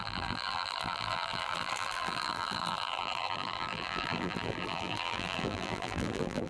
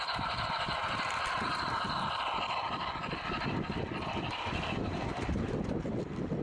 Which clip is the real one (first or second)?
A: second